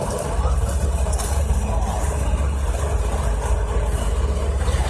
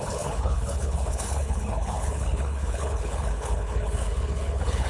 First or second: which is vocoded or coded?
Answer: second